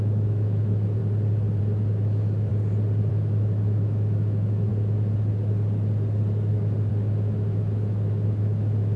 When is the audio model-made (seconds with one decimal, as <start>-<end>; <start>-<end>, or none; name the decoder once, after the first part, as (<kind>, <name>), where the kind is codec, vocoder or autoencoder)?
0.0-1.0 (autoencoder, DAC-VAE); 1.6-2.5; 3.1-4.7; 6.9-9.0